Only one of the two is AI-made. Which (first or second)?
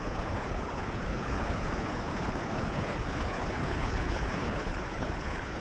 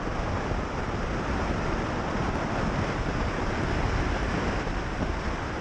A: first